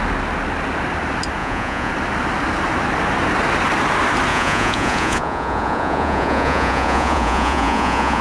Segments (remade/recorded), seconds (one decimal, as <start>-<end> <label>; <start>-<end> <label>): 0.0-1.4 recorded; 1.4-1.9 remade; 1.9-4.3 recorded; 4.3-8.2 remade